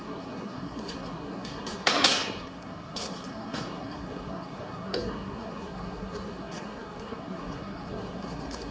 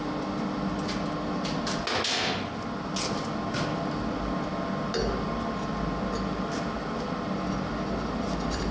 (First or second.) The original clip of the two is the second